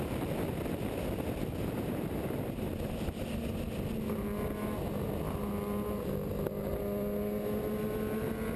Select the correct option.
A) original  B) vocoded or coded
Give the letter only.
A